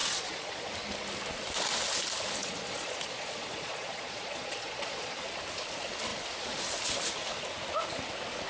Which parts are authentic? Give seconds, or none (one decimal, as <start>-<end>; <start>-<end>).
0.7-2.4; 5.2-8.5